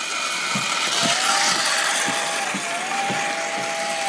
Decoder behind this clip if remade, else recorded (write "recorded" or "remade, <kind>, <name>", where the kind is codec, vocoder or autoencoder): remade, vocoder, BigVGAN v2